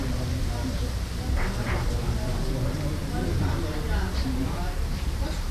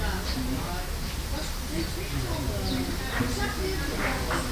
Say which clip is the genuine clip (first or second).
second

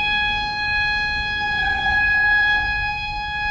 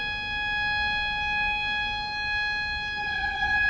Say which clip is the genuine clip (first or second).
second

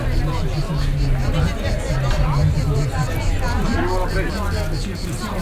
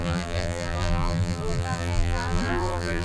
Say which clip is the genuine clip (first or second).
first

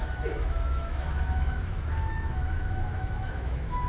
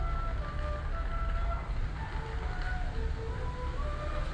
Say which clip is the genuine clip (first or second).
second